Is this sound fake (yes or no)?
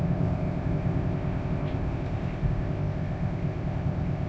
yes